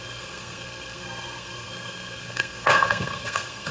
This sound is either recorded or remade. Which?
remade